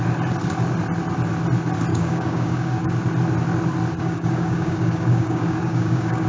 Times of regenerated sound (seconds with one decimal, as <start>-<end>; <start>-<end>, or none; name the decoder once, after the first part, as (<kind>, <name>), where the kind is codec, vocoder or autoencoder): 1.9-2.9 (codec, DAC); 4.0-6.3